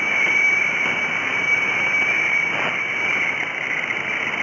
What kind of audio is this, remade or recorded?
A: recorded